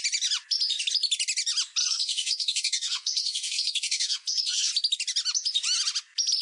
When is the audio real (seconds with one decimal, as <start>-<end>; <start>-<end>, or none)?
0.0-1.8; 4.7-6.4

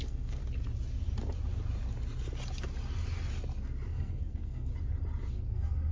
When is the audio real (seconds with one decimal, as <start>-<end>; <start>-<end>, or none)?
0.4-3.9; 4.7-5.3

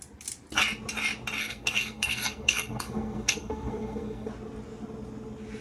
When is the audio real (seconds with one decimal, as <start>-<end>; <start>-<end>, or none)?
0.0-1.4; 4.3-5.6